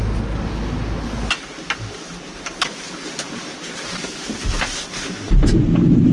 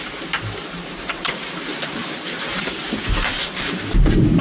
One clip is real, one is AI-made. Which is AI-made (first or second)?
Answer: second